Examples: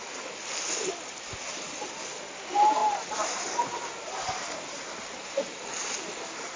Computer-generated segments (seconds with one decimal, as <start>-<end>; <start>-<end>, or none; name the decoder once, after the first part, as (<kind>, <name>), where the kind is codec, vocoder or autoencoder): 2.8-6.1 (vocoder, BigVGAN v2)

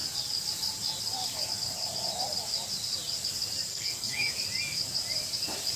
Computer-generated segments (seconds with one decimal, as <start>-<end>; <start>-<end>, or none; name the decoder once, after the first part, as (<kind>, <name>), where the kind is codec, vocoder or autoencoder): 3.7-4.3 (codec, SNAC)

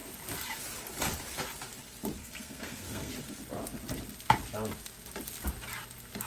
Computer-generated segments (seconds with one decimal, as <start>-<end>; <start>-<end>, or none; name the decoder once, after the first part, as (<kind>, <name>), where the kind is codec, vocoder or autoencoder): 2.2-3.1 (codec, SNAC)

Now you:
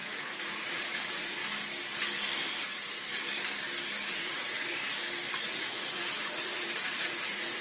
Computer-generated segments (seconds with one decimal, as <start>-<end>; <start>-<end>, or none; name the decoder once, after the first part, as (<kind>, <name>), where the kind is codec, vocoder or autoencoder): 0.0-1.4 (vocoder, Vocos); 2.5-2.9; 4.1-4.8; 5.4-7.6

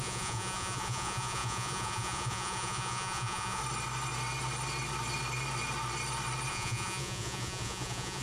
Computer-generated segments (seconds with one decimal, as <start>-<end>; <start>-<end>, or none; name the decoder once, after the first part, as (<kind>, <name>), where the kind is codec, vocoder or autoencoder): 0.0-3.6 (vocoder, Vocos); 6.5-8.2